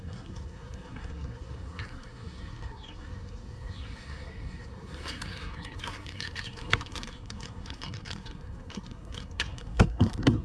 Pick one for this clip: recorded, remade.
remade